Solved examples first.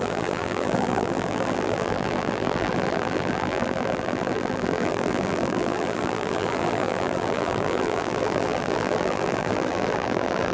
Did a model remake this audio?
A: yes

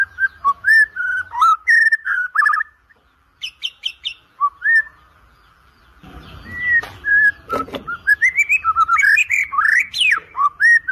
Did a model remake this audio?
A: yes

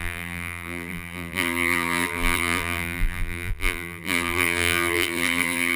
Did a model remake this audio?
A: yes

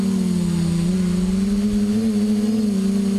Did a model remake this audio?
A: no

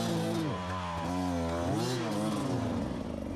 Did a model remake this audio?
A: no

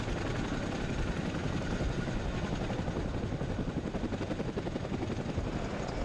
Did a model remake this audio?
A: yes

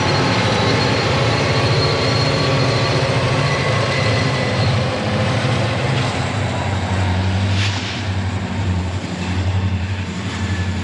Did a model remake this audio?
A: yes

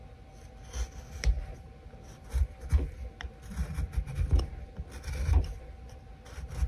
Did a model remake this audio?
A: no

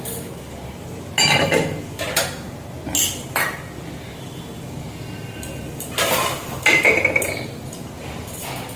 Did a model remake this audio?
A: no